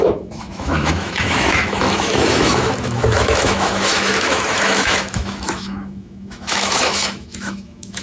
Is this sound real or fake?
fake